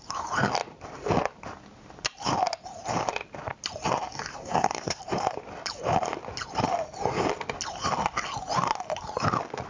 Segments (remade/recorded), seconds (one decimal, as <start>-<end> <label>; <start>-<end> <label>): 0.0-4.3 recorded; 4.3-5.0 remade; 5.0-9.7 recorded